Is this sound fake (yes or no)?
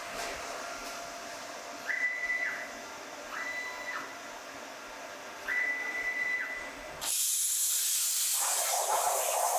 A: no